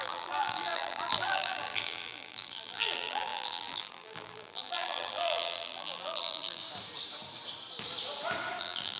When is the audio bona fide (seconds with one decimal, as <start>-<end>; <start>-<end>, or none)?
6.6-8.6